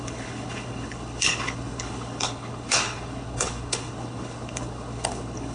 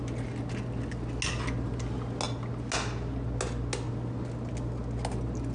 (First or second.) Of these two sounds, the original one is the second